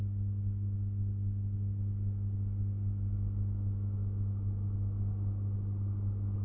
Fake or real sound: real